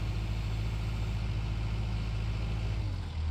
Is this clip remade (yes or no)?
no